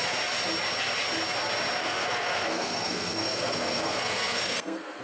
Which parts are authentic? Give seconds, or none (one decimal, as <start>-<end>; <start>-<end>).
0.0-1.8